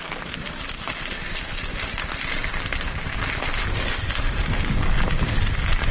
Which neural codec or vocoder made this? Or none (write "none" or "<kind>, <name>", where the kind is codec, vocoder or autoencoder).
none